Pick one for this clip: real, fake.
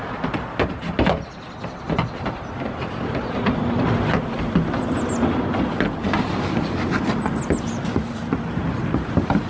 real